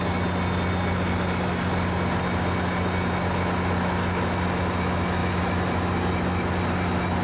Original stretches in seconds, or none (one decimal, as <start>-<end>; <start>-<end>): 0.0-7.2